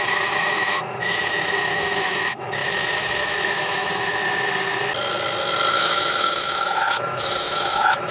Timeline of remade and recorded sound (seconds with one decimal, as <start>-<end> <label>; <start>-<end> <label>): 0.0-4.2 remade; 4.2-5.7 recorded; 5.7-8.1 remade